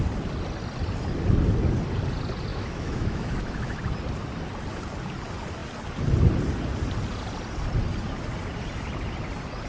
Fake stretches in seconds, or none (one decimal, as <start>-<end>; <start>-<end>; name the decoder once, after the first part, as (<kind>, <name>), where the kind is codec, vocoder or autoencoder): 2.5-3.8 (autoencoder, DAC-VAE)